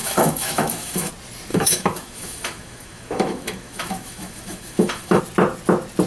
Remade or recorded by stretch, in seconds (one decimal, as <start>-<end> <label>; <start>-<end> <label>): 0.0-1.1 remade; 1.1-1.5 recorded; 1.5-5.2 remade; 5.2-6.1 recorded